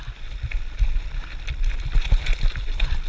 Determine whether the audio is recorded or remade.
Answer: recorded